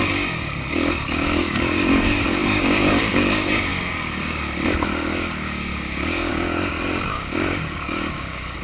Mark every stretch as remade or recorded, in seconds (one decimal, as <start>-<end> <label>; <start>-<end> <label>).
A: 0.0-8.6 remade